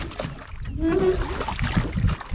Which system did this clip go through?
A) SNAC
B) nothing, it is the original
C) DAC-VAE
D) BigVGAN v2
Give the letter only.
B